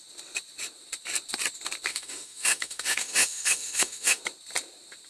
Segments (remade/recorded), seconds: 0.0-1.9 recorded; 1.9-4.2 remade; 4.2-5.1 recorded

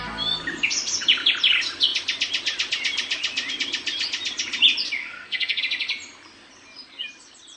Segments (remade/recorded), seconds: 0.0-5.0 recorded; 5.0-5.6 remade; 5.6-7.6 recorded